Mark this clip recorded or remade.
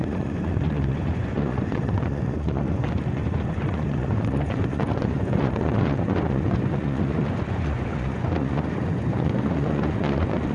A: remade